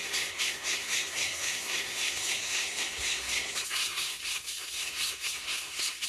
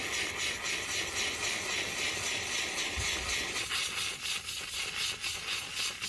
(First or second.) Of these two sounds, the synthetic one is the first